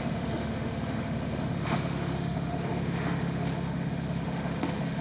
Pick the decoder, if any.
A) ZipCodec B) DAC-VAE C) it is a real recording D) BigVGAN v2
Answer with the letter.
B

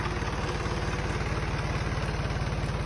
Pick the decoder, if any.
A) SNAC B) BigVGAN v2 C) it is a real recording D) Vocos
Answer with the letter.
C